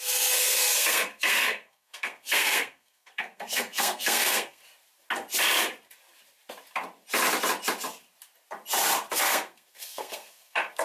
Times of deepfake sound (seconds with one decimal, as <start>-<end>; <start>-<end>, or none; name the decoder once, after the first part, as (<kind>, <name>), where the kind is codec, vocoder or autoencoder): 0.0-4.6 (codec, SNAC); 9.1-10.8